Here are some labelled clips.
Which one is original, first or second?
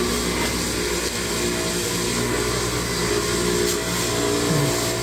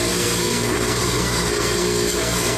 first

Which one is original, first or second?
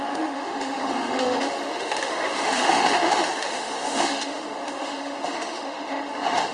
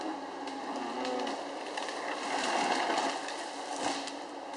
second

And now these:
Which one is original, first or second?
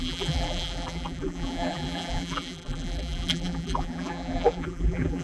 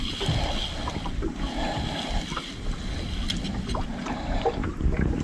second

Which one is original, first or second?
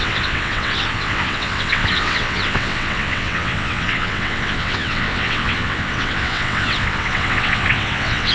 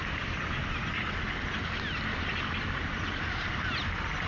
second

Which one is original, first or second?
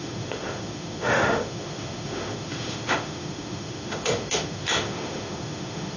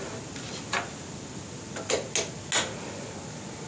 second